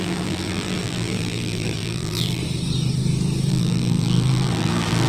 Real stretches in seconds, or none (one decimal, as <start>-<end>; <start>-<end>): 2.4-3.5